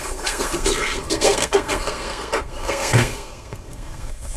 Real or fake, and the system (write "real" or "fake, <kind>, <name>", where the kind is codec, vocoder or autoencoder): fake, codec, SNAC